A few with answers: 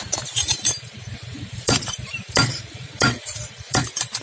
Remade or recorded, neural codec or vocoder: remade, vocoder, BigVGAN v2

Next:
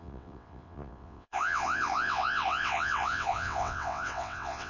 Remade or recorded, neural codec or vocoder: remade, vocoder, WaveNeXt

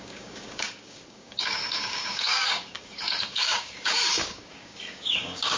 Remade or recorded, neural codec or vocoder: remade, codec, DAC